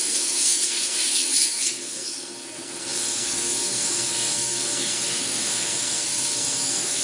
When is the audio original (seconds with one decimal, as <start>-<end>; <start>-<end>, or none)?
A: none

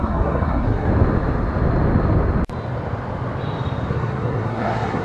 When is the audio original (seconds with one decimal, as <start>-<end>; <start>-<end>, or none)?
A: 0.9-3.9

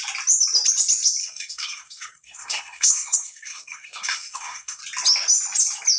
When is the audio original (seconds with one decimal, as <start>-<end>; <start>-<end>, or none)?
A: 0.0-1.2; 4.8-6.0

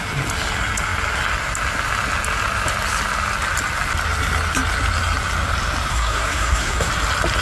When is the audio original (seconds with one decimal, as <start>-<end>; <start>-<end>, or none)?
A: 0.0-5.9; 6.9-7.4